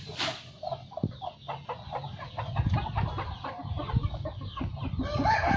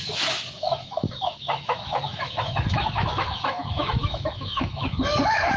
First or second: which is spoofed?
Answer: second